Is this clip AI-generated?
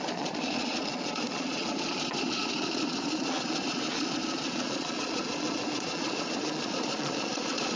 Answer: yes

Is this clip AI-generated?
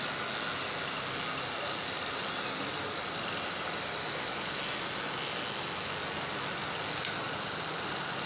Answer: no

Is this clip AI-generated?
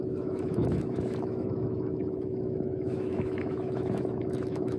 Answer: yes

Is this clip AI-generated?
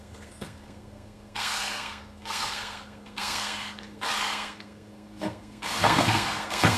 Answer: yes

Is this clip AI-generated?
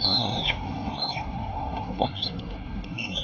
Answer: yes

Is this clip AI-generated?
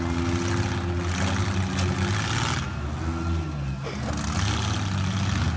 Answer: no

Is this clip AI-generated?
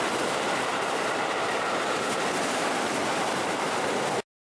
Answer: no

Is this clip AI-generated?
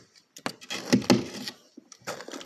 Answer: no